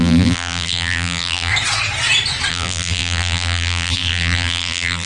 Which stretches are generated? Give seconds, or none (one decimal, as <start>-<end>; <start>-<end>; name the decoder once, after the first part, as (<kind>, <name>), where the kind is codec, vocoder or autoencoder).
0.0-1.5 (vocoder, BigVGAN v2); 2.5-5.1